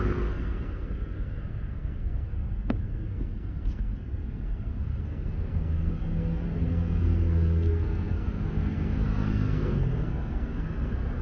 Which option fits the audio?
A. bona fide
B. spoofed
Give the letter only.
B